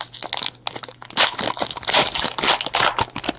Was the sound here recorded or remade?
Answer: recorded